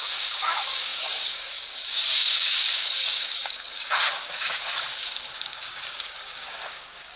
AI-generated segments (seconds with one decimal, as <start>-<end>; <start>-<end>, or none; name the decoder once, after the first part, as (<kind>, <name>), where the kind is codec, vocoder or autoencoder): 0.0-7.2 (codec, DAC)